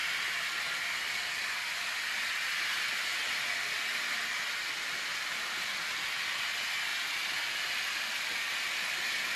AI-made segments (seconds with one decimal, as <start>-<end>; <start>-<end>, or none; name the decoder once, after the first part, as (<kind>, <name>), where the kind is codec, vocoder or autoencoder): none